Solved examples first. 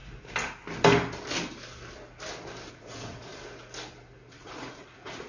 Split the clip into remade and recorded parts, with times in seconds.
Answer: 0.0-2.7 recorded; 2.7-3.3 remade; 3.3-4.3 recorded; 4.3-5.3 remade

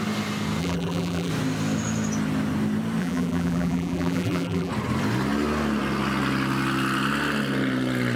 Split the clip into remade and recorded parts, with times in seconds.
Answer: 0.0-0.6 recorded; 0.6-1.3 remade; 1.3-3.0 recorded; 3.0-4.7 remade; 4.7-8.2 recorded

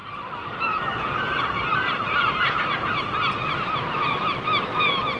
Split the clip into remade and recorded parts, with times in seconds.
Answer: 0.0-0.8 remade; 0.8-1.7 recorded; 1.7-4.8 remade; 4.8-5.2 recorded